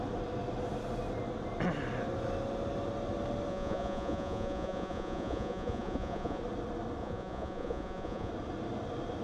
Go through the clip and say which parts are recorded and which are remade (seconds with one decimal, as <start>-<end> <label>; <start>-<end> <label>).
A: 0.0-3.5 recorded; 3.5-6.4 remade; 6.4-7.0 recorded; 7.0-8.3 remade; 8.3-9.2 recorded